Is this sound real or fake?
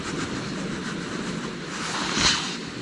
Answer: real